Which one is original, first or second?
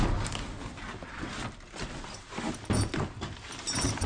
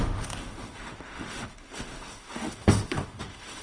first